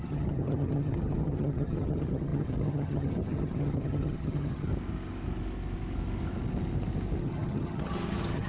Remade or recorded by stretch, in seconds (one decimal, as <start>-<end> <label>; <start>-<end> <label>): 0.0-4.7 remade; 4.7-7.2 recorded; 7.2-8.5 remade